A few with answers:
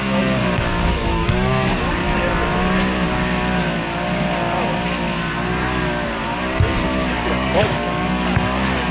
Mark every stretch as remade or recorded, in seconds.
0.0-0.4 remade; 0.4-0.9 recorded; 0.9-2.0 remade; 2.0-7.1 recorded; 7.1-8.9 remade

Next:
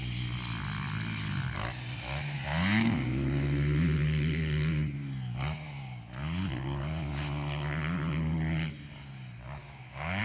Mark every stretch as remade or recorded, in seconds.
0.0-9.6 recorded; 9.6-10.2 remade

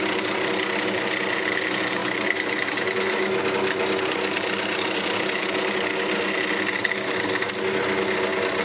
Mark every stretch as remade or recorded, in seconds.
0.0-8.6 recorded

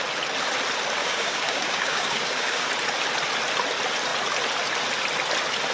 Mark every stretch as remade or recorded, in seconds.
0.0-1.0 recorded; 1.0-2.7 remade; 2.7-5.7 recorded

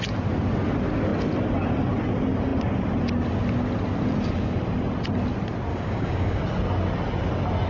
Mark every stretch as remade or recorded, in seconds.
0.0-5.7 recorded; 5.7-6.4 remade; 6.4-7.7 recorded